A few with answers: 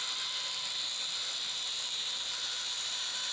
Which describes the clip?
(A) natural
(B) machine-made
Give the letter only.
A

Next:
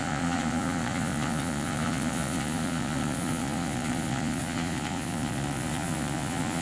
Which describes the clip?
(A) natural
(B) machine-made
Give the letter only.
B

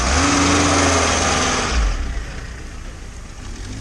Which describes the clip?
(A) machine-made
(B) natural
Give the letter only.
B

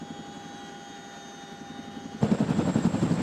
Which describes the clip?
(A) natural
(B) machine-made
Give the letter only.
A